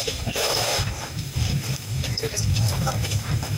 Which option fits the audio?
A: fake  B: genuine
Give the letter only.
A